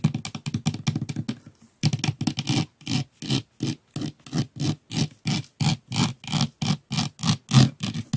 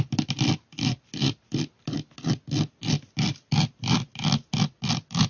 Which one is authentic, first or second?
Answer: first